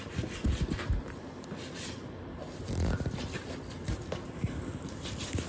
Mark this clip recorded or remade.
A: remade